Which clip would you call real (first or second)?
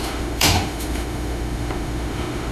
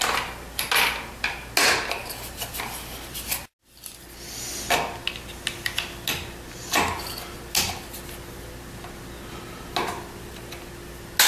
second